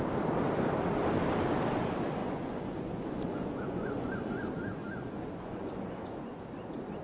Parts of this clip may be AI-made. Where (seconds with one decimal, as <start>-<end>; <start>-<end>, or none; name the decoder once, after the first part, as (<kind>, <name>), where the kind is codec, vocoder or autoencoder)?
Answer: 2.2-6.4 (vocoder, Vocos)